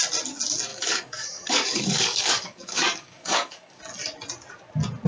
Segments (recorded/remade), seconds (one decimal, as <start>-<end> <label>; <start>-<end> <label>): 0.0-0.7 recorded; 0.7-3.8 remade; 3.8-5.1 recorded